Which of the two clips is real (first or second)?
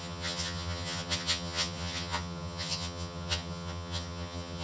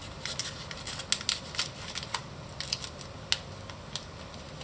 second